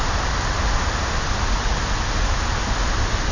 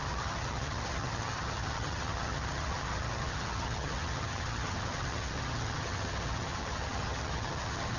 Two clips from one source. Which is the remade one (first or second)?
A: second